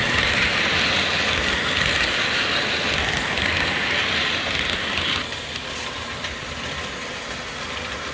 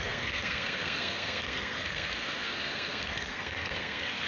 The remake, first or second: second